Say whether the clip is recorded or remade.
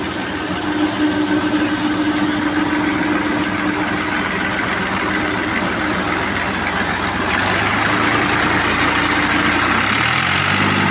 recorded